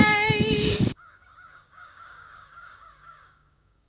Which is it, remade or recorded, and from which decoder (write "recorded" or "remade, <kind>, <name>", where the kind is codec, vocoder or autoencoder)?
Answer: remade, codec, DAC